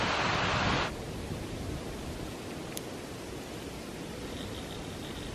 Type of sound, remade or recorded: recorded